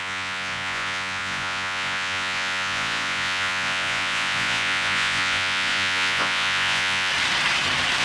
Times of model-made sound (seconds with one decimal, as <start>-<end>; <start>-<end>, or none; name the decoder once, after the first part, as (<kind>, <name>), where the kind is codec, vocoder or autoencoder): 0.0-7.1 (vocoder, Vocos)